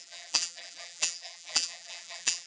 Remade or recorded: remade